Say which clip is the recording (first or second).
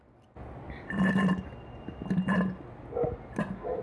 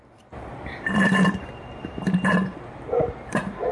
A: first